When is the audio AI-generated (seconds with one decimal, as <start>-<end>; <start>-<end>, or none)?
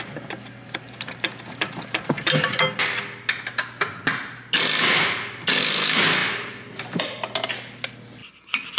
6.2-7.0